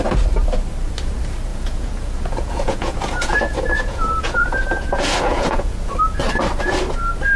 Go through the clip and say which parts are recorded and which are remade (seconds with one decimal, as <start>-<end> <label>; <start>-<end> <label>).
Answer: 0.0-1.5 recorded; 1.5-5.9 remade; 5.9-7.4 recorded